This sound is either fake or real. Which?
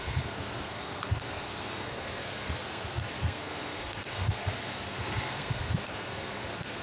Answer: fake